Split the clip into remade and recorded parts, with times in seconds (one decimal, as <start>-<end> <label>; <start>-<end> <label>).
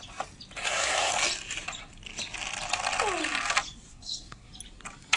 0.0-0.6 recorded; 0.6-1.1 remade; 1.1-3.9 recorded; 3.9-4.5 remade; 4.5-5.2 recorded